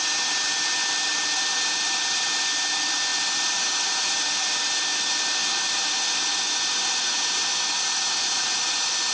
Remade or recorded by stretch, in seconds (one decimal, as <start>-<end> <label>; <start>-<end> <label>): 0.0-9.1 recorded